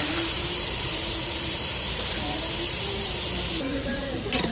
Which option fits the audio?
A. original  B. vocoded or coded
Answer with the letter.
B